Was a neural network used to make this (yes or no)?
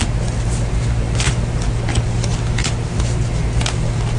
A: no